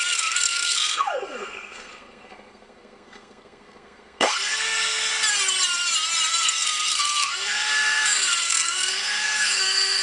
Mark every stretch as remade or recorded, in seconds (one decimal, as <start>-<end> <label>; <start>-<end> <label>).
0.0-5.1 remade; 5.1-6.3 recorded; 6.3-10.0 remade